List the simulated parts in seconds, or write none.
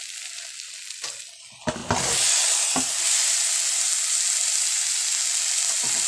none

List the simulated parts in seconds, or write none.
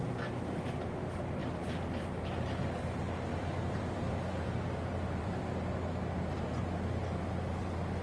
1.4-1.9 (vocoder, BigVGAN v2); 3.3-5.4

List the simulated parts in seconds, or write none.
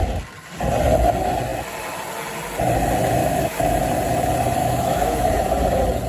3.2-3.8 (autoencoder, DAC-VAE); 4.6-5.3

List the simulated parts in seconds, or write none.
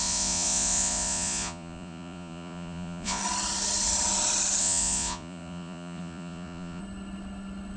0.0-3.2 (vocoder, Vocos); 4.6-6.8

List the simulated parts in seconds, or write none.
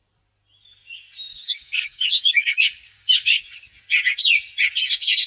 1.3-3.4 (codec, DAC)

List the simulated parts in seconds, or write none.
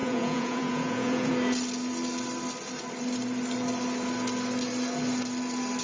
0.0-1.3 (vocoder, Vocos)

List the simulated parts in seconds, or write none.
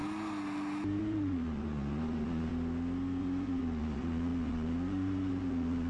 1.0-2.5 (vocoder, Vocos); 3.2-5.9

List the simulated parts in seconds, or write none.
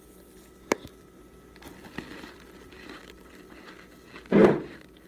1.8-3.3 (vocoder, BigVGAN v2); 4.4-5.1